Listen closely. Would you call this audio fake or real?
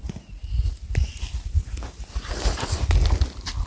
real